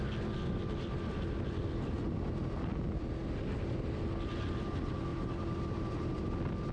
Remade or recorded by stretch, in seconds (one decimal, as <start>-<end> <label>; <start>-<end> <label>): 0.0-5.1 recorded; 5.1-6.3 remade; 6.3-6.7 recorded